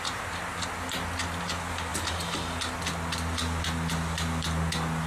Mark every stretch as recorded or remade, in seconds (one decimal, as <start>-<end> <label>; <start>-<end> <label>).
0.0-5.1 recorded

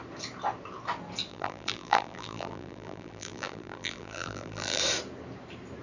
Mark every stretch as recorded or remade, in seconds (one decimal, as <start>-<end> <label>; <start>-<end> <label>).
0.0-1.3 recorded; 1.3-4.8 remade; 4.8-5.8 recorded

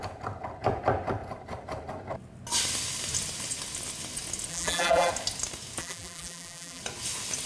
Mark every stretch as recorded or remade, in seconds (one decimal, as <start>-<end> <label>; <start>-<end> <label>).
0.0-4.5 recorded; 4.5-5.1 remade; 5.1-5.8 recorded; 5.8-6.8 remade; 6.8-7.5 recorded

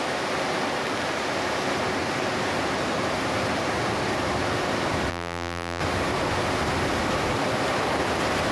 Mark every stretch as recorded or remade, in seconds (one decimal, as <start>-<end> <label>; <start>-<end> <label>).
0.0-5.1 recorded; 5.1-5.8 remade; 5.8-8.5 recorded

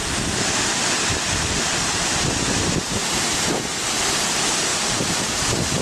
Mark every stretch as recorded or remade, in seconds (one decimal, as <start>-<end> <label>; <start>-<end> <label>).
0.0-1.1 remade; 1.1-3.0 recorded; 3.0-3.6 remade; 3.6-5.8 recorded

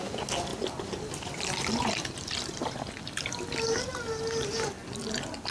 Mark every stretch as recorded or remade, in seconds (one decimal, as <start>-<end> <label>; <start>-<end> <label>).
0.0-0.5 recorded; 0.5-3.8 remade; 3.8-5.5 recorded

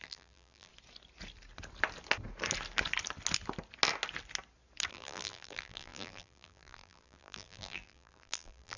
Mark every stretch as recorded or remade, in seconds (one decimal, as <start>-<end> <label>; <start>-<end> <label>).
0.0-0.7 remade; 0.7-4.9 recorded; 4.9-8.8 remade

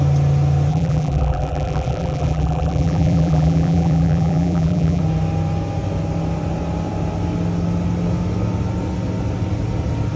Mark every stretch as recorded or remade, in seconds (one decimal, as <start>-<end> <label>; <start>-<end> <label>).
0.0-0.7 recorded; 0.7-5.0 remade; 5.0-10.2 recorded